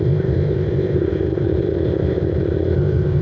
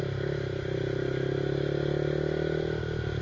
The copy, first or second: first